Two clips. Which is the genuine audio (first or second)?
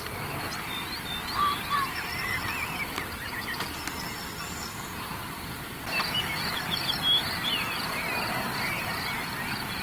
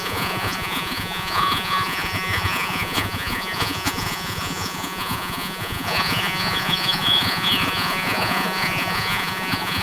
first